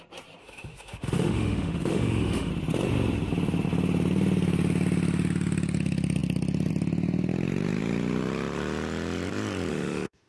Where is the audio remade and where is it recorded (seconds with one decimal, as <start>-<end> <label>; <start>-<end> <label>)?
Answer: 0.0-0.4 recorded; 0.4-2.5 remade; 2.5-9.7 recorded; 9.7-10.3 remade